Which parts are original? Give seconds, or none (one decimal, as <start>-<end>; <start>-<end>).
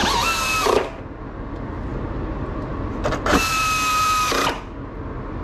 0.0-1.9; 4.6-5.4